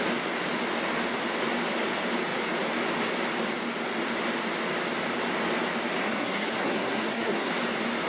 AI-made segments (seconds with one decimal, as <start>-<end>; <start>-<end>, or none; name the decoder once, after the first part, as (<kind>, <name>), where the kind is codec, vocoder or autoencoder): 6.0-7.5 (codec, SNAC)